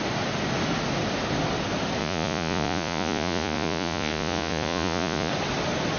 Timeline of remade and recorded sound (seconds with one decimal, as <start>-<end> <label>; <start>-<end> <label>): 0.0-2.0 recorded; 2.0-5.3 remade; 5.3-6.0 recorded